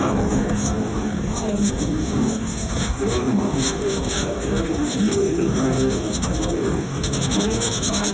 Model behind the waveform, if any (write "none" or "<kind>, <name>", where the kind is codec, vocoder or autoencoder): codec, DAC